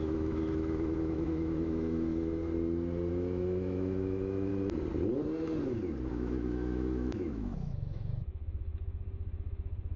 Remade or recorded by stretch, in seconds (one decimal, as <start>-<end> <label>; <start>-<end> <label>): 0.0-2.4 remade; 2.4-3.1 recorded; 3.1-4.5 remade; 4.5-6.1 recorded; 6.1-10.0 remade